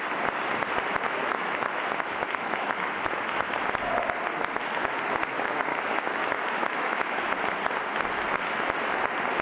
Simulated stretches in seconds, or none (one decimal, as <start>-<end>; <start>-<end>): 1.2-3.6; 5.7-7.2